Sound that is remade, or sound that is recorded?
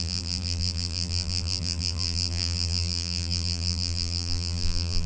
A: remade